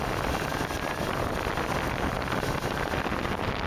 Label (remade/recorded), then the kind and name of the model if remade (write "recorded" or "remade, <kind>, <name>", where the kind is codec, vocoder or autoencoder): remade, vocoder, BigVGAN v2